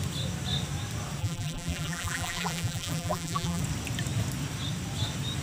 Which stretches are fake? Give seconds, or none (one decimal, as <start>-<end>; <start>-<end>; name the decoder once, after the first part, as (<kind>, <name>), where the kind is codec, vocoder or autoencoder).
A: 1.2-3.6 (vocoder, BigVGAN v2)